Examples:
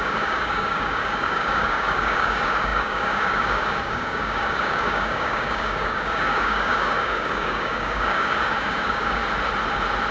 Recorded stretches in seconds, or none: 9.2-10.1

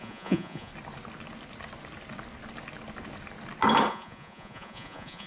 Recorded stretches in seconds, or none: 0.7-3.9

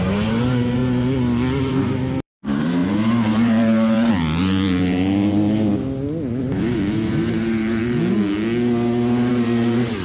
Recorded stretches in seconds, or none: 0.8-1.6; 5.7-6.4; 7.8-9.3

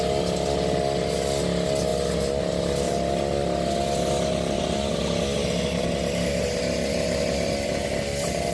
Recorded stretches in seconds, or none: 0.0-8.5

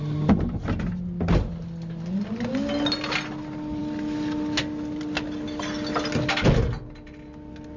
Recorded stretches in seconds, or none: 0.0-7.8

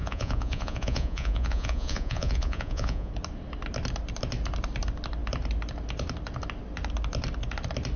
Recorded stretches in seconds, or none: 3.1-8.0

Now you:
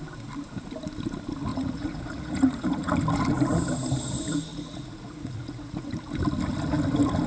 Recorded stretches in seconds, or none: 0.0-1.5; 2.9-4.5; 5.9-7.3